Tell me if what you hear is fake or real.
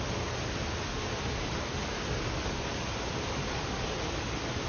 real